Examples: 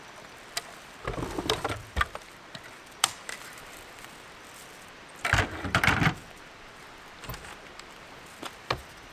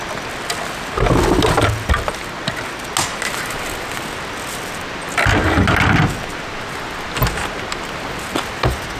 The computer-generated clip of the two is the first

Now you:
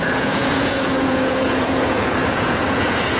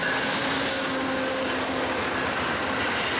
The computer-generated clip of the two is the first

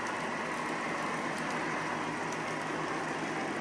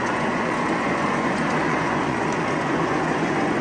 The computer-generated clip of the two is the second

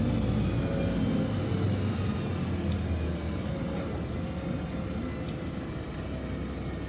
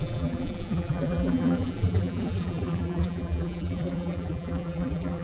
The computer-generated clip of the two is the second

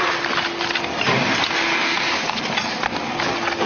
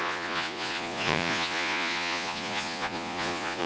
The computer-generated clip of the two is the second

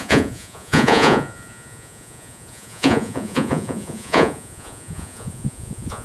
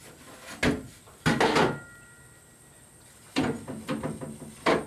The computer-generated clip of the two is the first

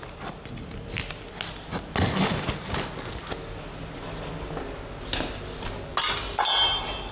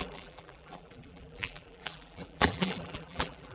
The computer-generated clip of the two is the second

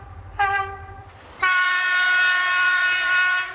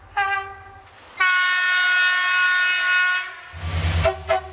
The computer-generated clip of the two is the first